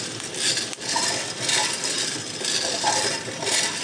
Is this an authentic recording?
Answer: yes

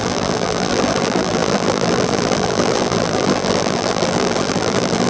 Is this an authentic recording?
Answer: no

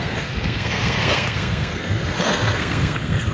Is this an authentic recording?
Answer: no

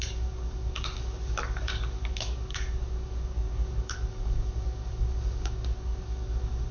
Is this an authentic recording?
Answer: no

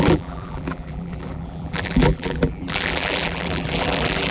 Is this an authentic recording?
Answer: no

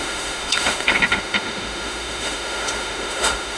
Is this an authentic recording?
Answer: no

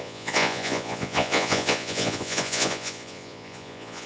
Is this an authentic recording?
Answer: no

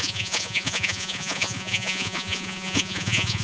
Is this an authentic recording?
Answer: no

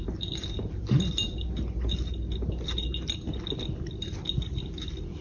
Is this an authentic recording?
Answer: yes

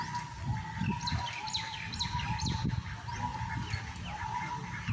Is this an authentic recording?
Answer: yes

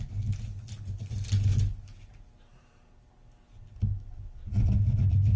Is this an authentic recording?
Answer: yes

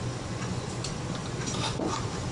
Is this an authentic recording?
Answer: no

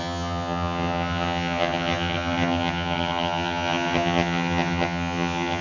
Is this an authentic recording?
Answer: no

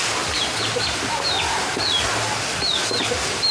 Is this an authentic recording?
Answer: yes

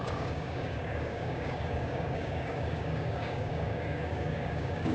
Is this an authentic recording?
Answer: no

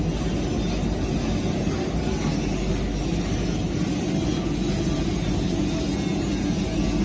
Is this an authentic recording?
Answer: yes